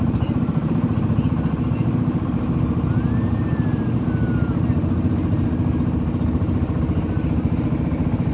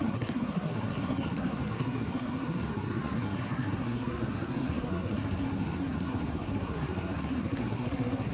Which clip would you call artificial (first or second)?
second